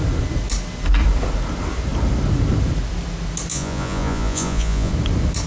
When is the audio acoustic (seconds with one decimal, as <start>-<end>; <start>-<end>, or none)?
0.0-3.5; 4.9-5.5